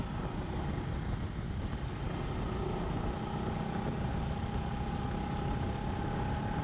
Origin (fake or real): real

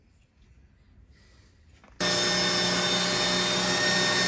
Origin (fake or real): real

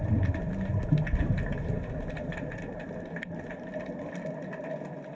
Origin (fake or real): real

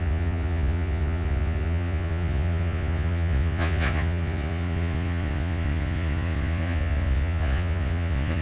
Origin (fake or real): fake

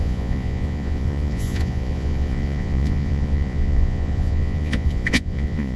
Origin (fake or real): fake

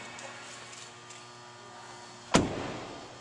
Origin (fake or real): real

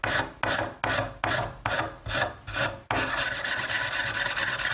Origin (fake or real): real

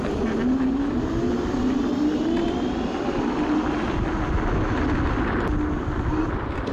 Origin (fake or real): real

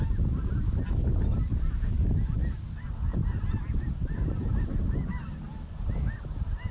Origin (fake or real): real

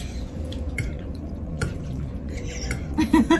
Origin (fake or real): fake